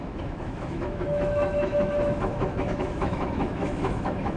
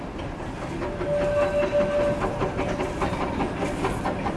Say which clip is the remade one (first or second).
first